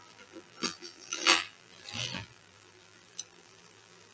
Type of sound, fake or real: fake